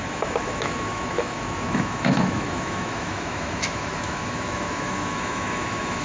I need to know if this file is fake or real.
fake